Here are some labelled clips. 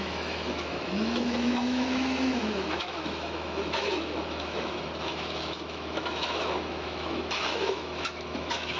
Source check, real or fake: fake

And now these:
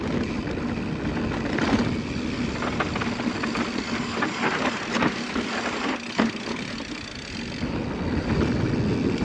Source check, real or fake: real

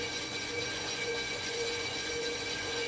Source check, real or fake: fake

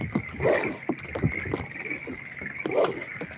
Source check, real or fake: real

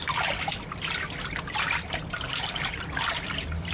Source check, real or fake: real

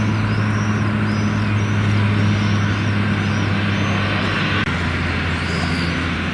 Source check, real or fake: real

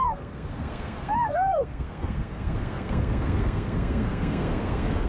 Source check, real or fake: fake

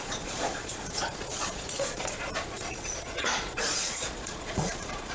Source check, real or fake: fake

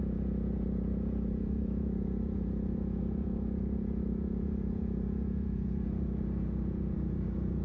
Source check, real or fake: fake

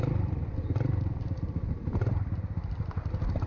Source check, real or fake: real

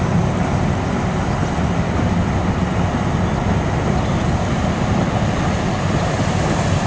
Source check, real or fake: real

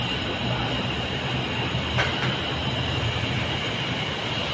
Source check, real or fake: real